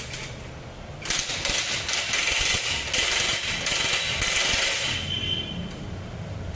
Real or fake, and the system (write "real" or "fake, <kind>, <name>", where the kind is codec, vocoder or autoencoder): real